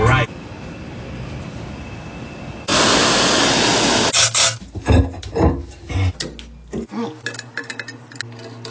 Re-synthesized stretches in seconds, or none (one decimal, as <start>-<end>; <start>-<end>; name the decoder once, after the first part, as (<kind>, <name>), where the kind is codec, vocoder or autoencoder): none